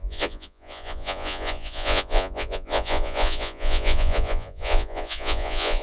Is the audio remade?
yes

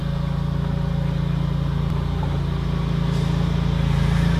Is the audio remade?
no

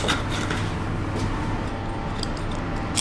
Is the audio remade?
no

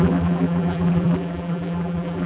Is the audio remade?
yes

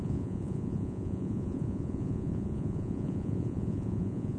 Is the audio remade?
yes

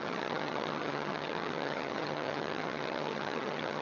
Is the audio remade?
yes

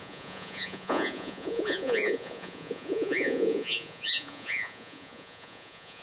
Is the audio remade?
yes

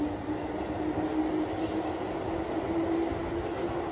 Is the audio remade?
no